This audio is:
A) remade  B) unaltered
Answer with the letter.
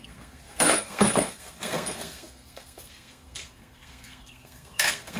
A